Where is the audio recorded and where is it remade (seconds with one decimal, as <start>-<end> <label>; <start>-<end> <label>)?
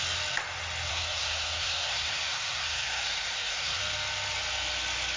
0.0-0.9 recorded; 0.9-3.8 remade; 3.8-5.2 recorded